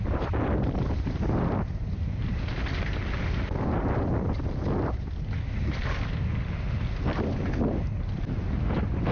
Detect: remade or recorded recorded